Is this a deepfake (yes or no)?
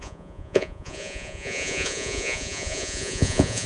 yes